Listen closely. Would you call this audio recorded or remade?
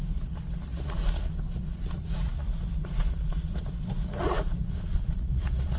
remade